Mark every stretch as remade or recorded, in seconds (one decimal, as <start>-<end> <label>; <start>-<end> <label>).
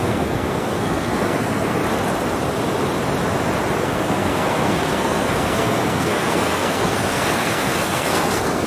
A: 0.0-1.8 remade; 1.8-3.8 recorded; 3.8-8.7 remade